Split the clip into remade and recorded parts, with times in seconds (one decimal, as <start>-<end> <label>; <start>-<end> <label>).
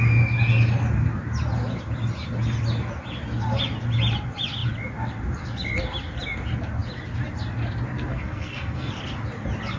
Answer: 0.0-8.1 recorded; 8.1-8.9 remade; 8.9-9.8 recorded